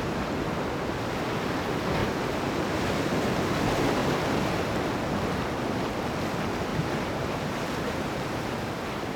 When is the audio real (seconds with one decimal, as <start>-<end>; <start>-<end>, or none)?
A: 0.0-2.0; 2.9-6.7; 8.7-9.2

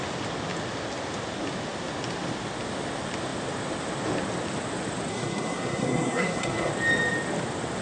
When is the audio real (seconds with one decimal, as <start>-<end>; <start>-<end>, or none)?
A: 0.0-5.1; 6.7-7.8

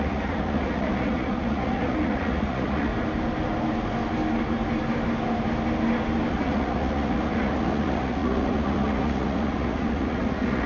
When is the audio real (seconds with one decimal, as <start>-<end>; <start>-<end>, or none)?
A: 2.9-6.3

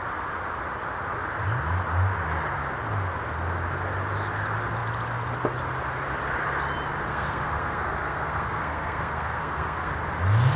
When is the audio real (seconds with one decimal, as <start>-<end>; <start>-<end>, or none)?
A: 0.0-7.1; 9.9-10.6